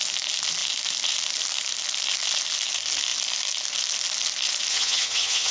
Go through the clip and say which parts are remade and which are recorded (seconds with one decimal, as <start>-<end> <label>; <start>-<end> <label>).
0.0-4.7 recorded; 4.7-5.5 remade